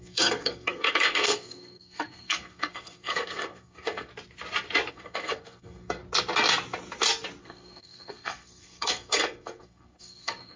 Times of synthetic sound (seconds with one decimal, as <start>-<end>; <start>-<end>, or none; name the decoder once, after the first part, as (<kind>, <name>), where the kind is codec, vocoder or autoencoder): 0.0-4.1 (codec, SNAC); 4.9-6.0; 7.4-10.6